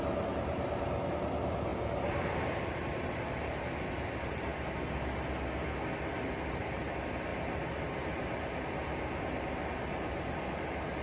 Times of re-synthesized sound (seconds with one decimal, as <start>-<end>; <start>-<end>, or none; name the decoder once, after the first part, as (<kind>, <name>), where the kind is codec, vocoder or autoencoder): 0.0-4.5 (vocoder, BigVGAN v2); 6.0-11.0